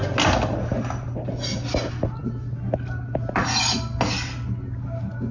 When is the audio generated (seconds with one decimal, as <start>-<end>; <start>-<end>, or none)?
none